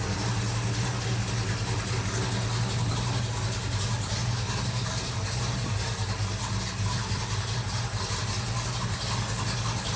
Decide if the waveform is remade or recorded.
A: recorded